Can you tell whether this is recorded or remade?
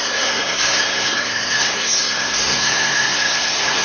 remade